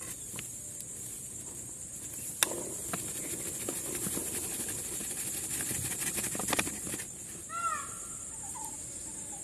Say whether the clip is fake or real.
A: real